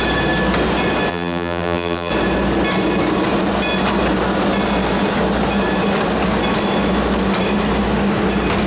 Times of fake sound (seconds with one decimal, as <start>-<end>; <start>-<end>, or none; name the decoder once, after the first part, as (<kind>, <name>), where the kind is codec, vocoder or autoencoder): 1.1-2.1 (vocoder, BigVGAN v2)